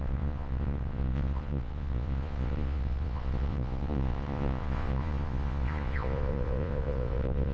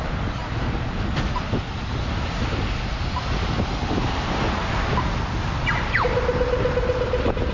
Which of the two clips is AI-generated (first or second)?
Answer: first